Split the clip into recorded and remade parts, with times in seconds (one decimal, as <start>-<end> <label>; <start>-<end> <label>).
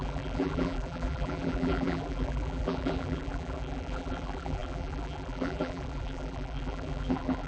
0.0-7.5 remade